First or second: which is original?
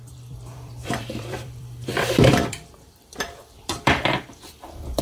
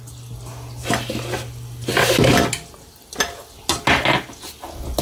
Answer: second